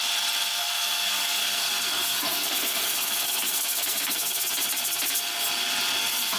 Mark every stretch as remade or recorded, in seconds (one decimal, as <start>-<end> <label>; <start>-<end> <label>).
0.0-0.6 recorded; 0.6-4.4 remade; 4.4-6.4 recorded